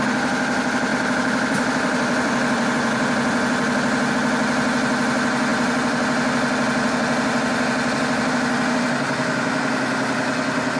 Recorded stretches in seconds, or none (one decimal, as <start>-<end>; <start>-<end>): 0.0-0.9; 4.1-5.5; 8.3-10.8